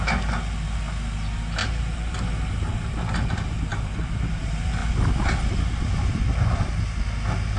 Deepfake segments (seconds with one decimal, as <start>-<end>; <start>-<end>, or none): 1.6-2.3; 3.7-4.3; 4.8-6.8